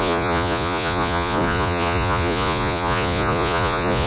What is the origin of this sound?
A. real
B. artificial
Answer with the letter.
B